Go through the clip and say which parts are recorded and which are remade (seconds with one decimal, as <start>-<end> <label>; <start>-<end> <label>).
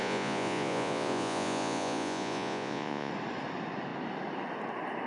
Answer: 0.0-3.1 remade; 3.1-5.1 recorded